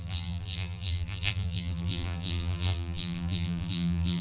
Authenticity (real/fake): fake